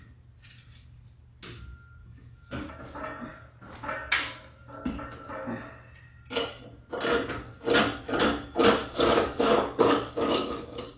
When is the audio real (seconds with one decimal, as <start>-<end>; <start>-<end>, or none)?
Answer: 0.0-2.0; 2.7-8.8